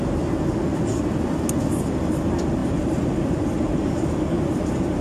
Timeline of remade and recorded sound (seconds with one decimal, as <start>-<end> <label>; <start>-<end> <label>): 0.0-5.0 recorded